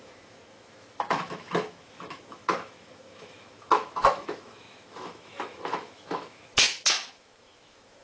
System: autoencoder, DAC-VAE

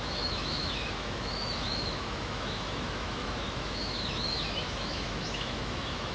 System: autoencoder, DAC-VAE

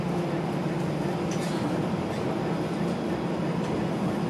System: none